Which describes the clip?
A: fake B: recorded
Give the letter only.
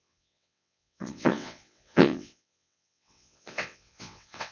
A